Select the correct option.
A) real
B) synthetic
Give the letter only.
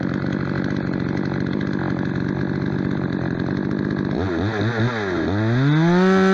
A